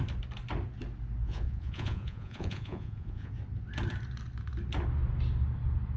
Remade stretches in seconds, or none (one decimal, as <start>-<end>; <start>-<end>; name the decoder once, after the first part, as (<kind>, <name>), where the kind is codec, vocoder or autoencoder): 1.2-3.3 (vocoder, Vocos)